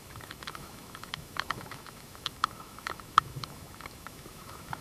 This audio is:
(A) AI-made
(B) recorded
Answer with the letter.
A